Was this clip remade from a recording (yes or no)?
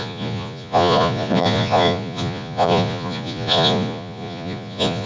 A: yes